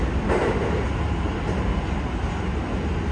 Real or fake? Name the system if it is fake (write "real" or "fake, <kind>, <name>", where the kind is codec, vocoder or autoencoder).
real